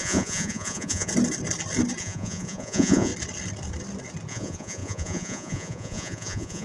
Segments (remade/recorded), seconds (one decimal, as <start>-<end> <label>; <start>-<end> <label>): 0.0-1.1 remade; 1.1-2.0 recorded; 2.0-3.1 remade; 3.1-4.3 recorded; 4.3-6.6 remade